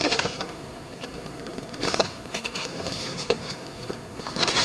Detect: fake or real fake